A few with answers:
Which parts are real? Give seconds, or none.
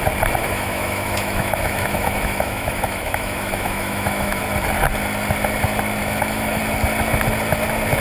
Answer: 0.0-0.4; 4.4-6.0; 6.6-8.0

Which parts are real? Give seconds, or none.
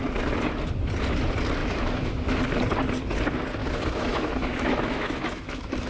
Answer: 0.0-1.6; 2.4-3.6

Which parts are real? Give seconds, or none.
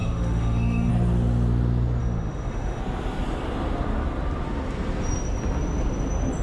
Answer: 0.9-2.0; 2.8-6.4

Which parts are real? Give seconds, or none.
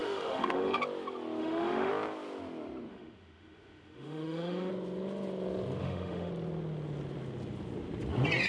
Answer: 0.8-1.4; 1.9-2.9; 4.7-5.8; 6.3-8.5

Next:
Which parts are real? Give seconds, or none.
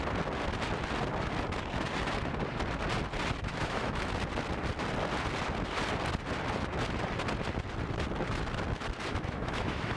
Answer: 0.0-3.5; 4.1-9.1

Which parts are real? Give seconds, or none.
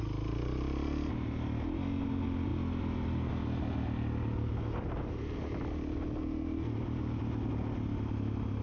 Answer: 0.0-8.6